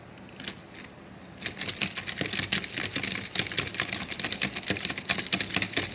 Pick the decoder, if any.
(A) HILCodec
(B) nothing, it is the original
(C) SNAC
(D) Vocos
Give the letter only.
B